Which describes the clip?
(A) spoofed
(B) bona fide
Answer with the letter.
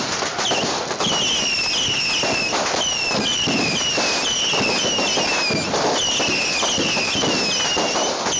B